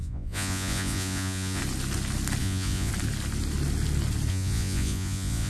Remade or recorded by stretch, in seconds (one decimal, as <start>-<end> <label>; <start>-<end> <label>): 0.0-1.6 remade; 1.6-2.4 recorded; 2.4-2.9 remade; 2.9-4.3 recorded; 4.3-5.5 remade